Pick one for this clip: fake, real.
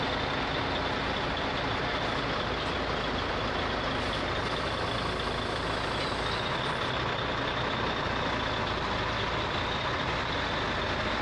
real